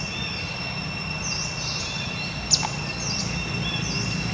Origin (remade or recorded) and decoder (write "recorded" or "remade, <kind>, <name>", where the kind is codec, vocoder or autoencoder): recorded